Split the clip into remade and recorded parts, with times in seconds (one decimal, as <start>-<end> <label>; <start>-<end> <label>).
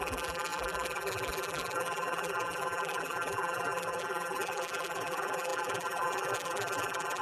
0.0-7.2 remade